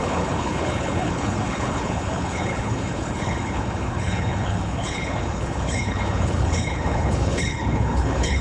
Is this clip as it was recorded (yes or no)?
no